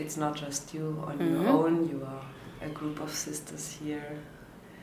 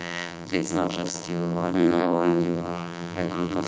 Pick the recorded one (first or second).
first